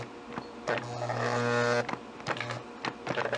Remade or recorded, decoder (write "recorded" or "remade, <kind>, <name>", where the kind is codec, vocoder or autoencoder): recorded